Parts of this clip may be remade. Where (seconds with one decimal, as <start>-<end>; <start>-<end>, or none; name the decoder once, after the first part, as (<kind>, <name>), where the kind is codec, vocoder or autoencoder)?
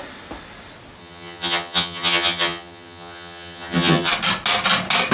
1.0-4.1 (vocoder, HiFi-GAN)